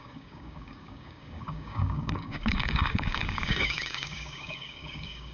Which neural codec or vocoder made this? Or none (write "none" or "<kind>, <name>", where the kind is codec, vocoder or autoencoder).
codec, DAC